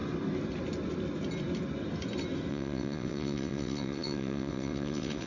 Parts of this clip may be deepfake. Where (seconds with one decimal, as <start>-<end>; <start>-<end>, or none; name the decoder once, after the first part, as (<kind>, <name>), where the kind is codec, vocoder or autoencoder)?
2.5-5.3 (vocoder, WaveNeXt)